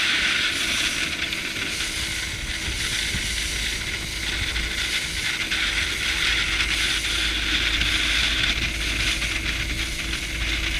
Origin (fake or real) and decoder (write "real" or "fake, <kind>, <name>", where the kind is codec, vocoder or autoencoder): real